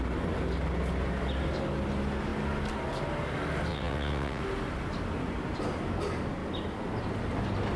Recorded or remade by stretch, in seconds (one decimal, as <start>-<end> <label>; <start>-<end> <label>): 0.0-3.7 recorded; 3.7-4.4 remade; 4.4-7.8 recorded